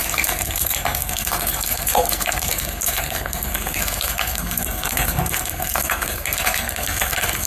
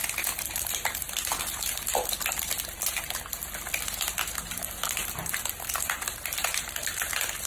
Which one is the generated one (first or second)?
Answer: first